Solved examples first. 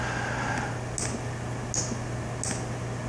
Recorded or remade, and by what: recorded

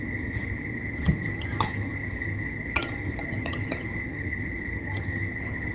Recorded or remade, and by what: remade, vocoder, HiFi-GAN